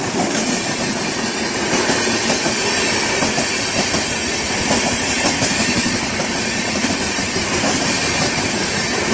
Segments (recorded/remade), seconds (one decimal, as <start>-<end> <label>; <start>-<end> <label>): 0.0-5.5 recorded; 5.5-6.8 remade; 6.8-9.1 recorded